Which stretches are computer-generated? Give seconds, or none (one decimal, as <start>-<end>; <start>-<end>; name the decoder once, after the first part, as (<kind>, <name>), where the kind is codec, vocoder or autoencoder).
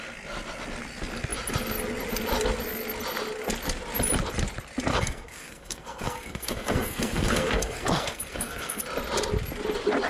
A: 4.9-8.8 (codec, SNAC)